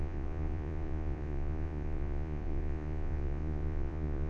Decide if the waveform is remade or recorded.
remade